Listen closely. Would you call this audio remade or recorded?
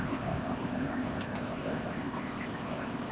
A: remade